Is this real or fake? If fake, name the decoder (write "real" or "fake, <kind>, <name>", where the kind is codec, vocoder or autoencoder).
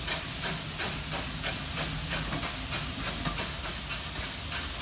real